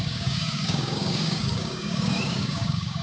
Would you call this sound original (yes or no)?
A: no